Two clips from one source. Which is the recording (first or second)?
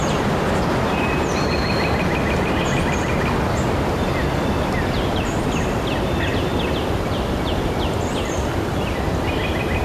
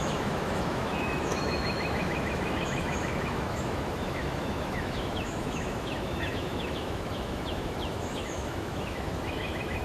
first